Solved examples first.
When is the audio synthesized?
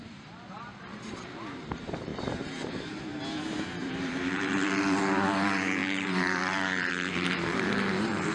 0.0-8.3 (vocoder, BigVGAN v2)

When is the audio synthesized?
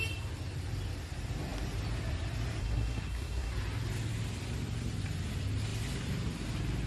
2.6-3.5 (codec, SNAC)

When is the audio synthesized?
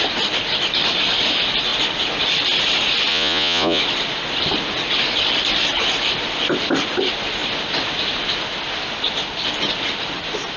3.1-3.8 (vocoder, Vocos)